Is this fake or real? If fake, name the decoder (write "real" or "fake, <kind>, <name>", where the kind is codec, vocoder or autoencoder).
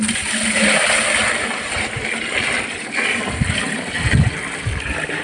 real